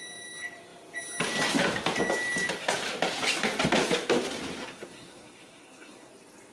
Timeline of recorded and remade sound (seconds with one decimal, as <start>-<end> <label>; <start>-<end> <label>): 0.0-4.6 recorded; 4.6-6.1 remade; 6.1-6.5 recorded